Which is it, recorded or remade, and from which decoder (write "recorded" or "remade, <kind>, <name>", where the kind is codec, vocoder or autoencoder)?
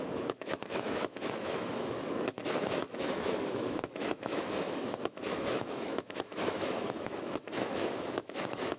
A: remade, autoencoder, DAC-VAE